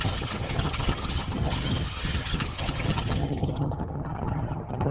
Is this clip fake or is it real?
fake